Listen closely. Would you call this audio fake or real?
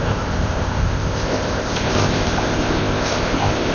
fake